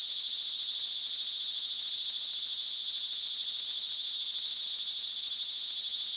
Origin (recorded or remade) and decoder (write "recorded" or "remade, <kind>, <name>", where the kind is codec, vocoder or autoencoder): recorded